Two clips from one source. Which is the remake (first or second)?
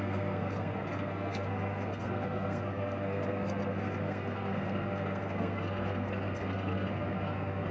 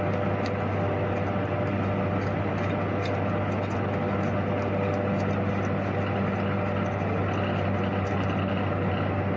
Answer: first